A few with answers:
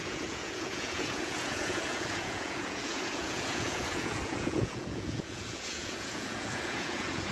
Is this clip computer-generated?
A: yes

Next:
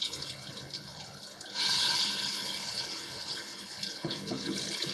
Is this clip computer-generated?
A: yes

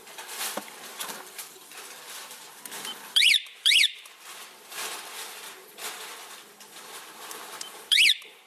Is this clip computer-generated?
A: yes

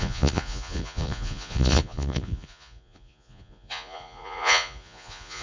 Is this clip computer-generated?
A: yes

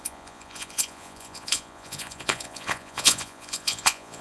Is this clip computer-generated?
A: yes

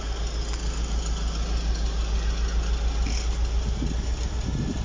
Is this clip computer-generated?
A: no